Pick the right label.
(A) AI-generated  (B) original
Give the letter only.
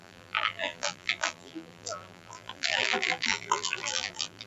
A